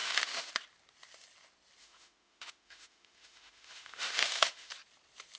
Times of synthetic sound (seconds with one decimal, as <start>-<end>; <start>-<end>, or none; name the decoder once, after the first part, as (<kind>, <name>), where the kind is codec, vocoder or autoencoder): 0.0-0.5 (autoencoder, DAC-VAE); 1.8-4.7